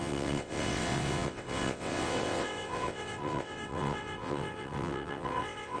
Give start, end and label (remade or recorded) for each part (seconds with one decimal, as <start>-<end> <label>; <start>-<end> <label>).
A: 0.0-5.8 remade

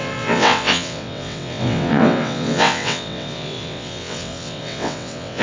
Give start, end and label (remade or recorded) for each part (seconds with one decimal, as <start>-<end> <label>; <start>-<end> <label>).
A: 0.0-5.4 remade

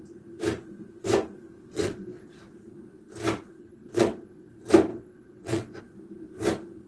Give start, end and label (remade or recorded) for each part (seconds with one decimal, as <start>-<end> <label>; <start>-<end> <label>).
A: 0.0-1.7 recorded; 1.7-2.3 remade; 2.3-3.6 recorded; 3.6-4.5 remade; 4.5-4.9 recorded; 4.9-5.8 remade; 5.8-6.9 recorded